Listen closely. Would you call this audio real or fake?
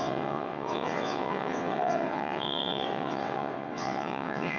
fake